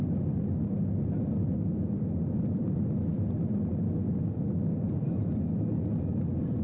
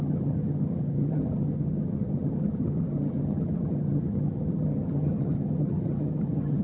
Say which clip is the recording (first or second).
first